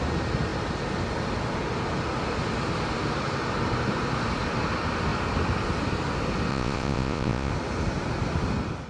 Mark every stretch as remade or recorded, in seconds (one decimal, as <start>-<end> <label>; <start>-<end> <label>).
0.0-6.5 recorded; 6.5-7.5 remade; 7.5-8.9 recorded